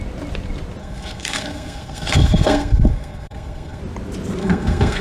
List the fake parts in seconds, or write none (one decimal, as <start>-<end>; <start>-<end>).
0.8-3.8; 4.4-5.0